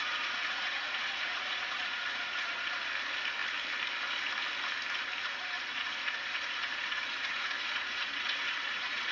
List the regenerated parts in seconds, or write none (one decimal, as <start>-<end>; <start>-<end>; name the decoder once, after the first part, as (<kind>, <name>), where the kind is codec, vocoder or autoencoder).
0.0-2.9 (vocoder, Vocos); 5.2-9.1